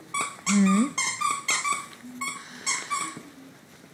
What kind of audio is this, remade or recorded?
recorded